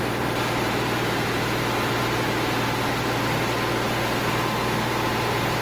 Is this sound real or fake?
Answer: real